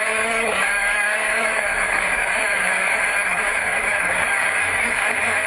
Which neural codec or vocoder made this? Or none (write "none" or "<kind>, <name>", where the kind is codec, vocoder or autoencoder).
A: codec, DAC